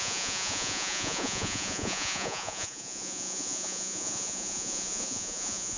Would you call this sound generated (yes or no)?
yes